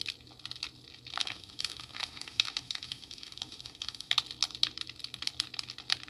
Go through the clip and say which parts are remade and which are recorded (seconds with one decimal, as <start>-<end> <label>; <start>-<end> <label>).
0.0-1.2 recorded; 1.2-4.1 remade; 4.1-6.1 recorded